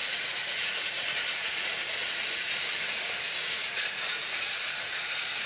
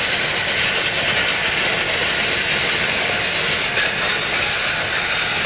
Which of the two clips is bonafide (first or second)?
second